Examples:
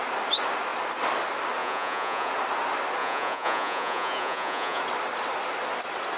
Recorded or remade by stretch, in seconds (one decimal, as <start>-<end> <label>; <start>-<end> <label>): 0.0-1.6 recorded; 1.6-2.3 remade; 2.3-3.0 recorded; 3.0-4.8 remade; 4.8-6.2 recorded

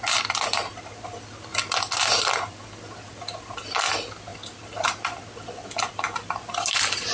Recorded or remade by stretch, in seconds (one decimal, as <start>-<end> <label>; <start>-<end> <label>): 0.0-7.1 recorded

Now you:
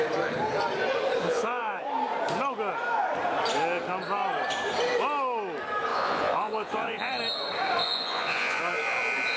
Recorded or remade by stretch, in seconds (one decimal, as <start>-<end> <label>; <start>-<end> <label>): 0.0-1.2 recorded; 1.2-1.8 remade; 1.8-5.9 recorded; 5.9-7.1 remade; 7.1-7.8 recorded; 7.8-8.6 remade; 8.6-9.4 recorded

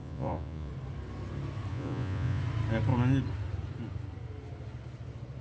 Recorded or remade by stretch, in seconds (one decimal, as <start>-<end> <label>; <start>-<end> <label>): 0.0-0.7 remade; 0.7-1.7 recorded; 1.7-2.4 remade; 2.4-5.4 recorded

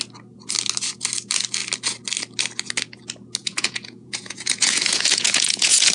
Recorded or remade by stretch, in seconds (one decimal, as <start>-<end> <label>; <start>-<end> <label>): 0.0-3.4 recorded; 3.4-5.9 remade